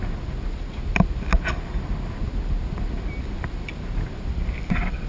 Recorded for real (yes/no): yes